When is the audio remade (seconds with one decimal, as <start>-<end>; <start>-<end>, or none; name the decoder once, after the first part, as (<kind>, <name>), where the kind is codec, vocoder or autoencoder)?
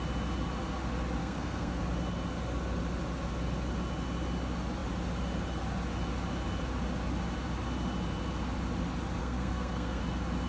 1.2-1.8 (codec, SNAC); 9.2-10.0